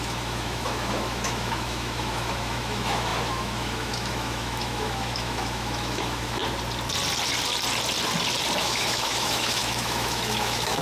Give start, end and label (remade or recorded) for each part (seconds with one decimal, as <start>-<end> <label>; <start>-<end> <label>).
0.0-6.4 remade; 6.4-8.6 recorded; 8.6-10.8 remade